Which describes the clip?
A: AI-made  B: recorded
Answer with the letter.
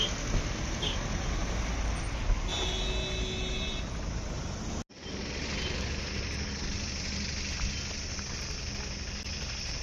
B